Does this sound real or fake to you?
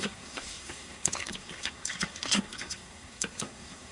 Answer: fake